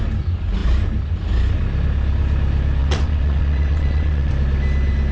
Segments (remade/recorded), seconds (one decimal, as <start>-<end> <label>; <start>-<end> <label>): 0.0-2.8 recorded; 2.8-4.3 remade; 4.3-5.1 recorded